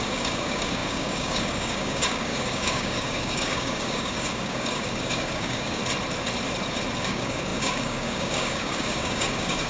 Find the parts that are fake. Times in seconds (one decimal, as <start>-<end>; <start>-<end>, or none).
0.0-5.8; 7.0-9.7